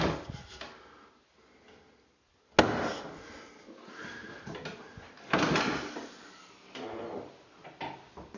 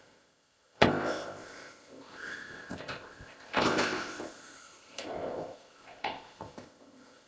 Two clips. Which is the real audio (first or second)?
first